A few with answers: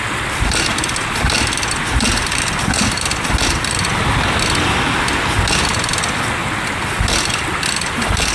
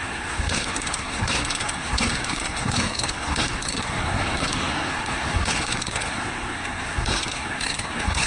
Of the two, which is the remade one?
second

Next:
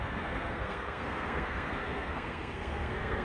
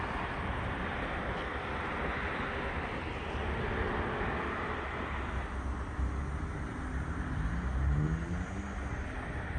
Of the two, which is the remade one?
first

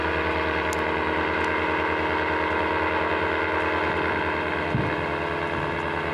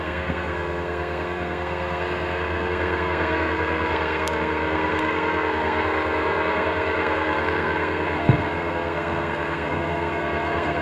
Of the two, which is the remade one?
second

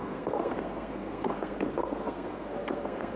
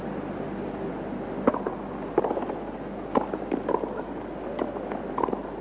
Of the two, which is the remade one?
first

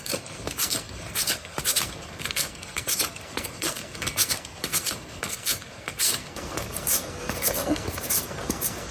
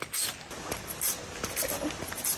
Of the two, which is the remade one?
first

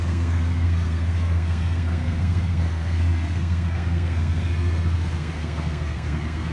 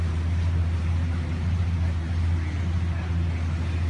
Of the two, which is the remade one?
first